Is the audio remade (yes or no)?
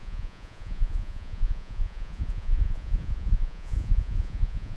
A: yes